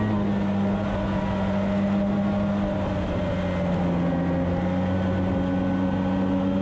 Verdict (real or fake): real